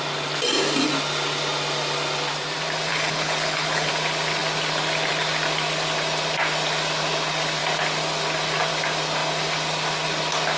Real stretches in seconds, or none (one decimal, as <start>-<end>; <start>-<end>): 0.0-2.9; 3.9-10.6